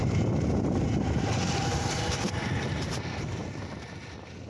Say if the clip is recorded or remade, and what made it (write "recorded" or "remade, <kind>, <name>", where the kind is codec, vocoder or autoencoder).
recorded